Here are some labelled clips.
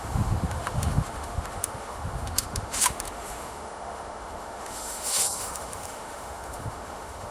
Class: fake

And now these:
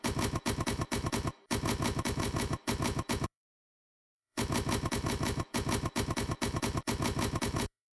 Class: fake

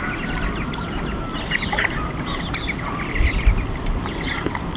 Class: real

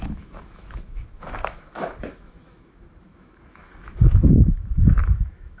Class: fake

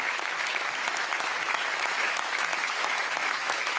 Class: fake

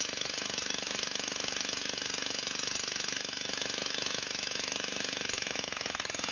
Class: fake